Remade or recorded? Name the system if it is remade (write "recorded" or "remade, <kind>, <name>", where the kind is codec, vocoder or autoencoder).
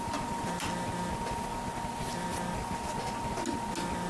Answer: recorded